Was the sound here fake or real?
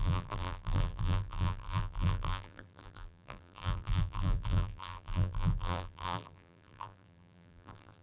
fake